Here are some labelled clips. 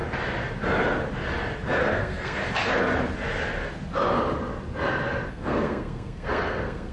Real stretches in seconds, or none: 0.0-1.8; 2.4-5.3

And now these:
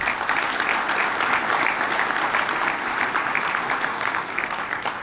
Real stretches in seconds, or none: 0.0-3.9; 4.6-5.0

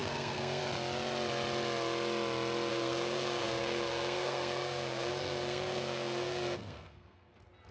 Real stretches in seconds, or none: 0.6-2.7; 7.3-7.7

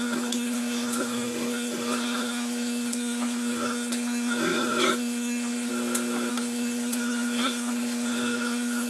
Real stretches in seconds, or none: 5.7-6.3